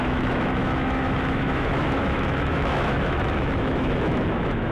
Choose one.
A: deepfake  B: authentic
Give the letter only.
A